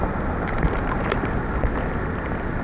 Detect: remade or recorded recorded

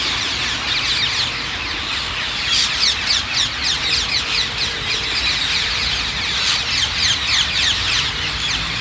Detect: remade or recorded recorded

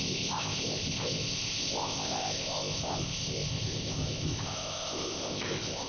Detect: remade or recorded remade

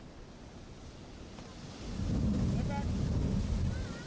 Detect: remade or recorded recorded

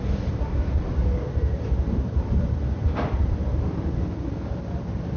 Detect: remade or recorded recorded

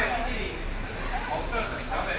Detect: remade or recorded recorded